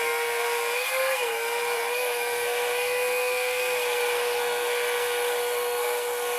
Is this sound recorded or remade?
remade